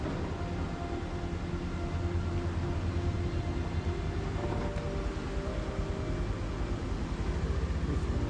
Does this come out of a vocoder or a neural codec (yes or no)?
no